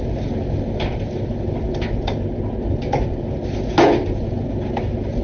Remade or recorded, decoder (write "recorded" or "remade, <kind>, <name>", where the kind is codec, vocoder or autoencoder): recorded